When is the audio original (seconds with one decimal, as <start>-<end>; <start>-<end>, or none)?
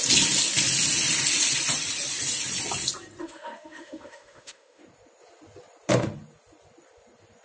0.0-3.2; 4.8-7.4